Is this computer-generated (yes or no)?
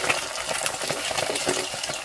no